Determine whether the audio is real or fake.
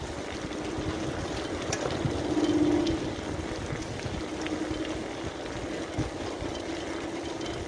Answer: real